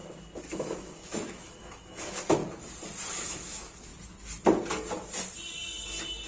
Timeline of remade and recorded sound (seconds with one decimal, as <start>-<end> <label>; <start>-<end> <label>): 0.0-0.5 recorded; 0.5-2.4 remade; 2.4-3.1 recorded; 3.1-3.9 remade; 3.9-6.3 recorded